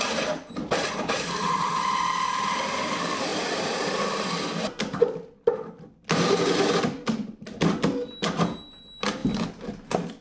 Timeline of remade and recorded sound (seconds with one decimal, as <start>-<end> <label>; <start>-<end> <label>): 0.0-3.3 recorded; 3.3-4.4 remade; 4.4-10.2 recorded

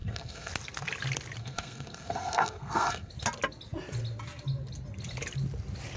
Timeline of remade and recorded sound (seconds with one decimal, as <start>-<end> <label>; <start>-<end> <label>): 0.0-0.5 remade; 0.5-1.4 recorded; 1.4-3.1 remade; 3.1-6.0 recorded